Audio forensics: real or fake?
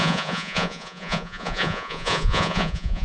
fake